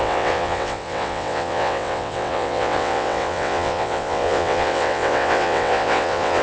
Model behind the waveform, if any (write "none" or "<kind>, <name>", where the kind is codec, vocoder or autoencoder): vocoder, WaveNeXt